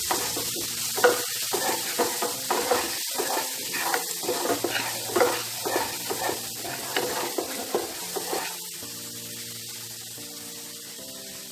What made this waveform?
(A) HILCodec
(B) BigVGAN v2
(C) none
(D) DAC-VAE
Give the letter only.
C